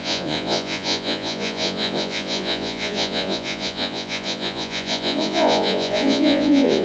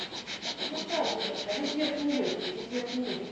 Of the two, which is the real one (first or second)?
second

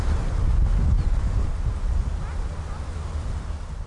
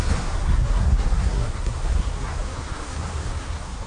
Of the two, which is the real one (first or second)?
first